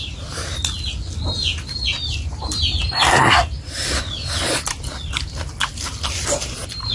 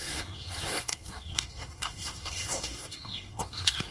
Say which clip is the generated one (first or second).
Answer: second